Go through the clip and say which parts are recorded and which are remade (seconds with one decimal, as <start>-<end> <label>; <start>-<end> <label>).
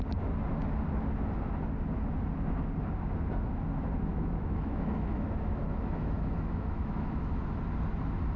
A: 0.0-4.1 recorded; 4.1-7.3 remade; 7.3-8.4 recorded